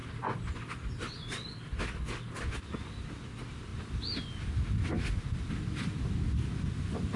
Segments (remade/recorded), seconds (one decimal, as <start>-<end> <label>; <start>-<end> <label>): 0.0-7.2 recorded